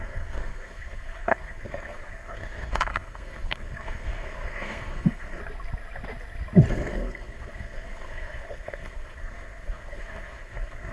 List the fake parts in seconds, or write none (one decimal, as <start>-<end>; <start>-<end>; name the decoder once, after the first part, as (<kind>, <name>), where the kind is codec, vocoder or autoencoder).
0.0-5.4 (codec, SNAC); 6.7-10.9